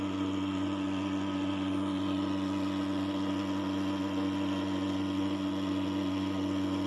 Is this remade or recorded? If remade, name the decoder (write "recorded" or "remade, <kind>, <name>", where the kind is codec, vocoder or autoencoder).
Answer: recorded